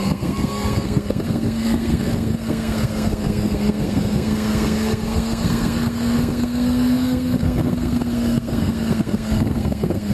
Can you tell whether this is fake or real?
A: fake